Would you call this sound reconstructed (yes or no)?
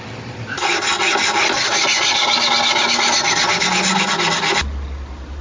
no